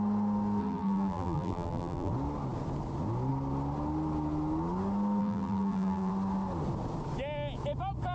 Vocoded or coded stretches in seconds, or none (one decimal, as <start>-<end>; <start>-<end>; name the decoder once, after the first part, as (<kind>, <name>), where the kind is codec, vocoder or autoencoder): 0.6-2.1 (vocoder, BigVGAN v2); 5.2-6.1